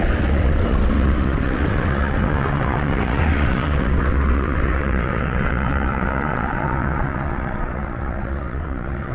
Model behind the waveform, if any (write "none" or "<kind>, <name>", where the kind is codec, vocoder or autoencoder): vocoder, WaveNeXt